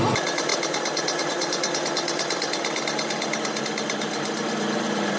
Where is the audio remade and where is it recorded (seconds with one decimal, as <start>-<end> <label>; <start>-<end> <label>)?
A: 0.0-5.2 recorded